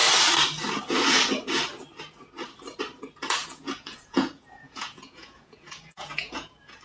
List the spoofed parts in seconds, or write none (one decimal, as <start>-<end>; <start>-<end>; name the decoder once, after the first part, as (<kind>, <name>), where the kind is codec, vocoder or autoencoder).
3.4-6.8 (vocoder, Vocos)